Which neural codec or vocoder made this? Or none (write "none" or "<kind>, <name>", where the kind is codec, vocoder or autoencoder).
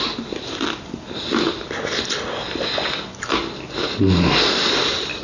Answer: none